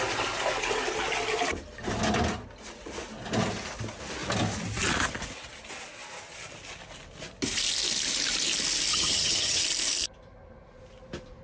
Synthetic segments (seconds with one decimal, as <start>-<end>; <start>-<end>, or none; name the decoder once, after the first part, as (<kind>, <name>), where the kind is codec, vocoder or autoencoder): 8.9-9.6 (vocoder, HiFi-GAN)